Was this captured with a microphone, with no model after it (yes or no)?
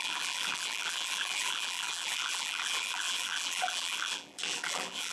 no